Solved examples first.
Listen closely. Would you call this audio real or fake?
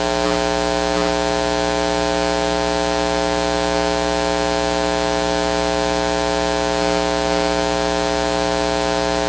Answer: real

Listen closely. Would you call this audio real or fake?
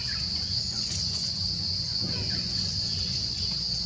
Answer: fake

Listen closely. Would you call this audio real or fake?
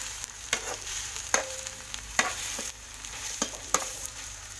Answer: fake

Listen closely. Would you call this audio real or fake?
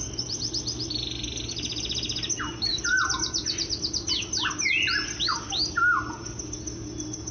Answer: real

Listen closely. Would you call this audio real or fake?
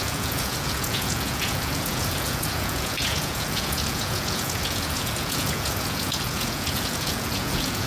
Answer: fake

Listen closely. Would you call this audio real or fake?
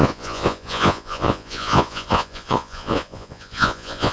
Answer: fake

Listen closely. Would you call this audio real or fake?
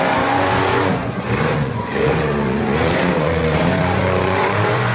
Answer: fake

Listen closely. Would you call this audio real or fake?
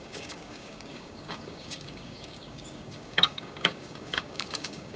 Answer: fake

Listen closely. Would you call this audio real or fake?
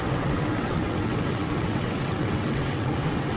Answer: fake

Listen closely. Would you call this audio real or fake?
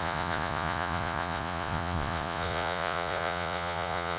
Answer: fake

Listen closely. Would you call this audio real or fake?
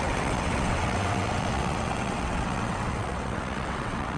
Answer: fake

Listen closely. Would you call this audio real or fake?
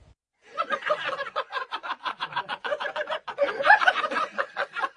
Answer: fake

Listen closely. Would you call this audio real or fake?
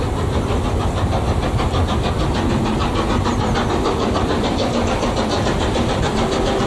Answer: real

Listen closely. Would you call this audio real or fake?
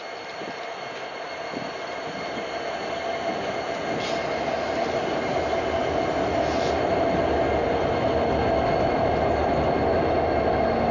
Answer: real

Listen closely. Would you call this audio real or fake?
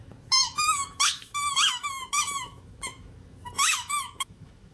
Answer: fake